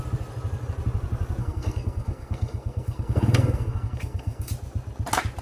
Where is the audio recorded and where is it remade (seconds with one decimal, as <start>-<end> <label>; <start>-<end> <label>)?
0.0-1.4 recorded; 1.4-4.5 remade; 4.5-5.4 recorded